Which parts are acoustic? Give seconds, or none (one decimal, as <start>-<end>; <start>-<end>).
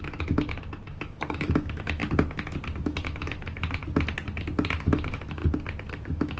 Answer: 2.0-2.8; 3.8-4.8; 5.4-5.9